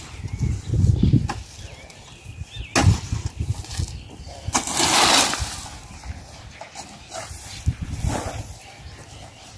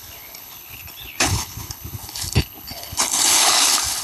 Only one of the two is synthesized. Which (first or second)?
second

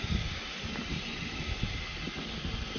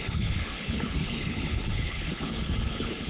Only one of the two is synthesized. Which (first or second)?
second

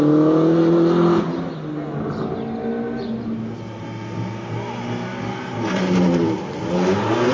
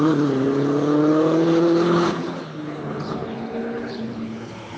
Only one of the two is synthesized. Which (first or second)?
second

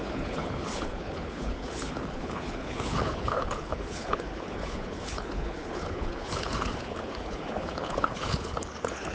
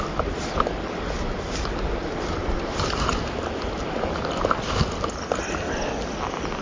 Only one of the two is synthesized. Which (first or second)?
first